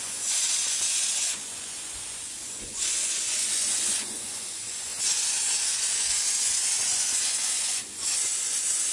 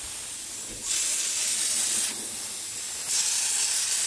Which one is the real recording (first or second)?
second